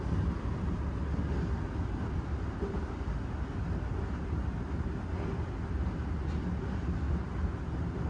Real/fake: real